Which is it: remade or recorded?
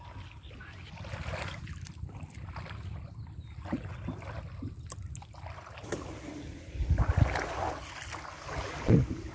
recorded